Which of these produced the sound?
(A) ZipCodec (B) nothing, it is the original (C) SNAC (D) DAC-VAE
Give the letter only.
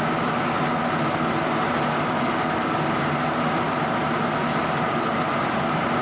B